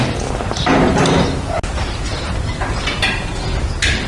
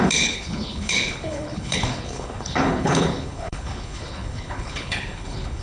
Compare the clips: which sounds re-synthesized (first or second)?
second